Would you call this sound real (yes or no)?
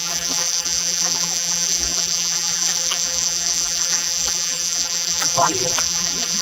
no